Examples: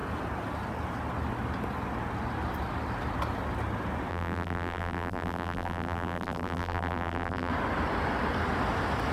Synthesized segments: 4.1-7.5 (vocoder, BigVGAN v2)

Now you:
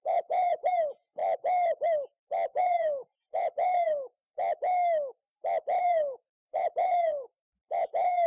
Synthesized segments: 0.0-1.2 (vocoder, Vocos); 2.6-4.4; 5.8-8.3

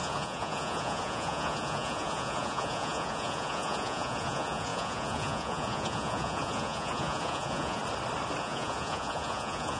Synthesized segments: 0.0-7.8 (vocoder, Vocos); 8.4-9.8

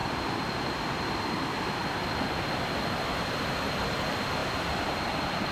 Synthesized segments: none

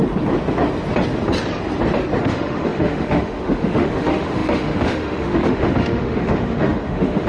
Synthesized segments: 2.2-7.3 (autoencoder, DAC-VAE)